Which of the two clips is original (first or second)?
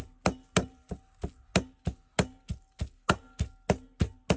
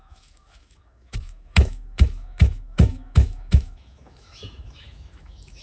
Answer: first